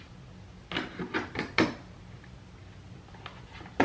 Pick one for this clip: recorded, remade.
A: recorded